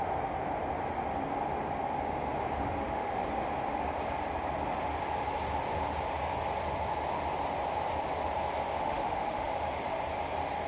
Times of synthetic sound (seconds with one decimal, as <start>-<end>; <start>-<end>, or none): 2.8-3.3; 8.8-9.5

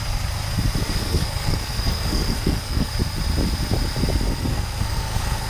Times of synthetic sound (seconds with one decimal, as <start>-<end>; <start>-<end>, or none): 0.8-2.9; 4.5-5.5